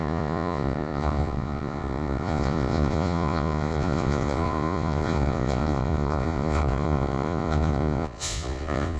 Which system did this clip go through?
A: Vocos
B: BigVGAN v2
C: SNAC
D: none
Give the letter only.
A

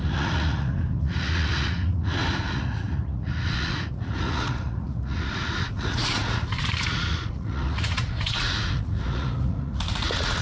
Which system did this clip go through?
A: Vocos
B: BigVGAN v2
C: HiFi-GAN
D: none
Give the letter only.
A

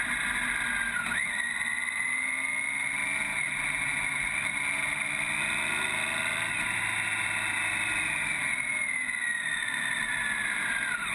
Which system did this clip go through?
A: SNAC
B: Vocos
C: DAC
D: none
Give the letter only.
D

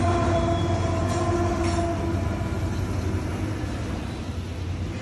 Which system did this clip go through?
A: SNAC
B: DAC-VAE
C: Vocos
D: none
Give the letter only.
D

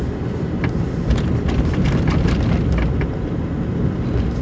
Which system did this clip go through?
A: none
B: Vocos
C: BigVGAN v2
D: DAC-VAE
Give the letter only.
A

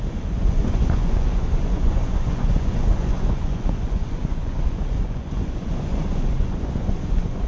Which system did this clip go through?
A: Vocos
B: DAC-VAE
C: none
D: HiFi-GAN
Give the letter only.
A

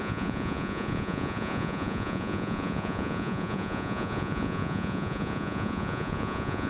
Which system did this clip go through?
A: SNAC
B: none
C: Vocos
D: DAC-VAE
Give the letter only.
C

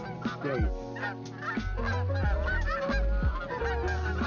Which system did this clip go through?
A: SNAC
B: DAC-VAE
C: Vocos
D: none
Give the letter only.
D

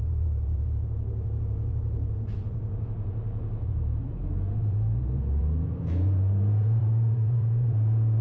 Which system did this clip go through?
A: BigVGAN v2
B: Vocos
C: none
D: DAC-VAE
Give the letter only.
B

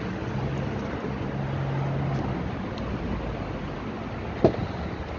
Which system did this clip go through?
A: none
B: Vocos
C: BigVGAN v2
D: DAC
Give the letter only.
A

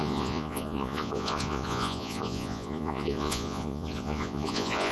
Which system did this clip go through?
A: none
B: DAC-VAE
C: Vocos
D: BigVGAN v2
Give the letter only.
C